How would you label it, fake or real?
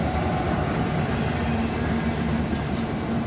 real